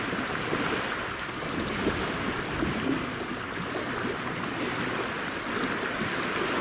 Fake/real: real